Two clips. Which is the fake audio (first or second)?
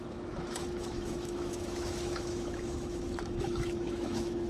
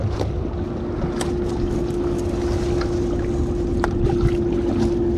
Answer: first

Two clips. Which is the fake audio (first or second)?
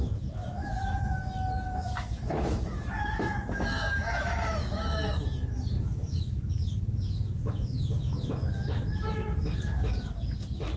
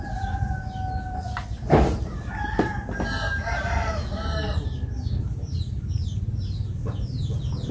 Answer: first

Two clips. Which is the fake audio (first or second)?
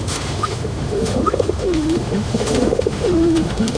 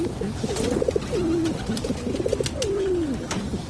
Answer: first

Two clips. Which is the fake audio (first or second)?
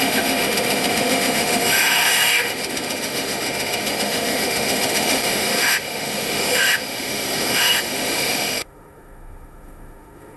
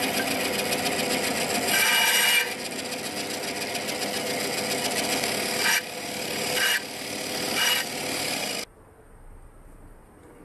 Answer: first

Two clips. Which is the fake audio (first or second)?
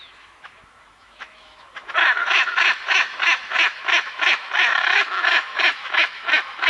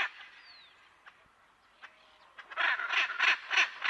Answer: first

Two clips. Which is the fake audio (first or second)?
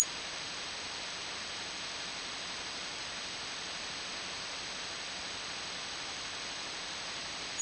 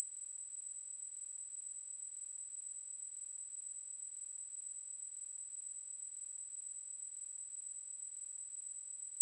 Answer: second